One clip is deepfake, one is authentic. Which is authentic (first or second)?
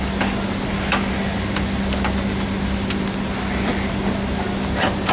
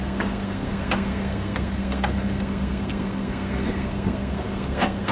first